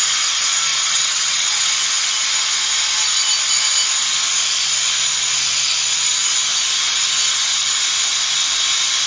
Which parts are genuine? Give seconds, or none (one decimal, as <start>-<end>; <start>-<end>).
0.0-0.7; 1.7-9.1